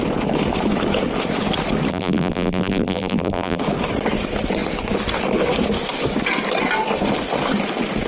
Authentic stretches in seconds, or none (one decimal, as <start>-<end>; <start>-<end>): 0.0-1.9; 3.6-8.1